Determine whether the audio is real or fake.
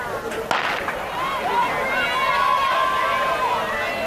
real